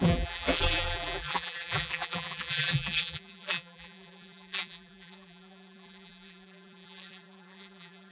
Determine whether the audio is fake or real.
fake